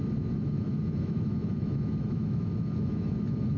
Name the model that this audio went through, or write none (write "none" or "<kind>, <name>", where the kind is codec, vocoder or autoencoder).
autoencoder, DAC-VAE